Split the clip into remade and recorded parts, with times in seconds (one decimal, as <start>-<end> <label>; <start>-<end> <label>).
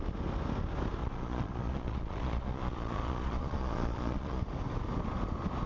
0.0-1.0 recorded; 1.0-4.4 remade; 4.4-5.7 recorded